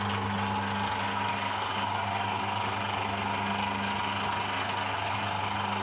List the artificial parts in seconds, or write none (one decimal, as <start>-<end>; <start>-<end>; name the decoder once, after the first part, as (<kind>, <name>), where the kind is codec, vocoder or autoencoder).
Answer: 1.3-2.4 (codec, DAC)